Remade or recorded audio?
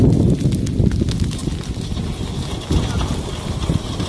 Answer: recorded